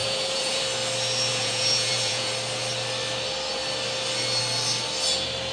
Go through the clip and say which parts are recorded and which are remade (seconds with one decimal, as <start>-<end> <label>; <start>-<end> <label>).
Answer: 0.0-0.6 remade; 0.6-1.3 recorded; 1.3-2.3 remade; 2.3-5.5 recorded